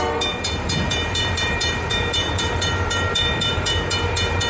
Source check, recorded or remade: remade